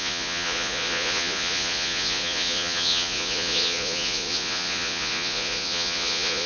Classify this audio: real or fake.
fake